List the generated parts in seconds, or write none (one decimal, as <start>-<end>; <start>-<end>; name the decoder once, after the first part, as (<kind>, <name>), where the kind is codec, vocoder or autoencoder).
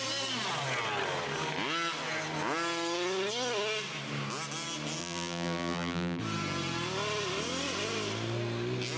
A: 5.0-6.2 (vocoder, BigVGAN v2)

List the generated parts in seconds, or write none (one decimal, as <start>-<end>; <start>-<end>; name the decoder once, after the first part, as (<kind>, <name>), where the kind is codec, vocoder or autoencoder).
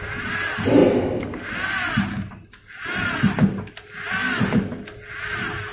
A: none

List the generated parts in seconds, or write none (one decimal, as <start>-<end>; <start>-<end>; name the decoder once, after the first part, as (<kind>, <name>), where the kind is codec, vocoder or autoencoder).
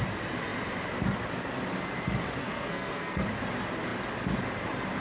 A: 2.4-3.2 (codec, SNAC)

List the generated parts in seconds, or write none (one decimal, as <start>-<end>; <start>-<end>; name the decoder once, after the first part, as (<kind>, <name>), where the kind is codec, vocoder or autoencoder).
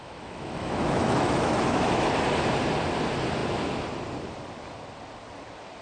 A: 0.0-2.1 (autoencoder, DAC-VAE)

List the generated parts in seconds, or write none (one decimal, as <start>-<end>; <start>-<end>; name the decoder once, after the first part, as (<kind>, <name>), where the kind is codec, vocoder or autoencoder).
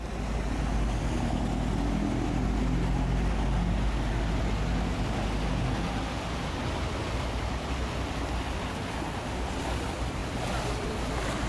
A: none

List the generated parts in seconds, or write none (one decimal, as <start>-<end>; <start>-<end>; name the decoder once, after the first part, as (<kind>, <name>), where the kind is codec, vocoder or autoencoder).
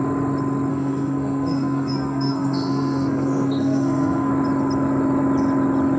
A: 0.7-4.3 (codec, SNAC)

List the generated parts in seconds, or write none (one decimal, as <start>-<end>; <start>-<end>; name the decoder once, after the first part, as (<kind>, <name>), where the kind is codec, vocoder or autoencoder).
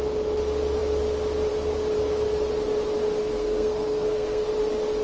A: 3.2-4.5 (codec, SNAC)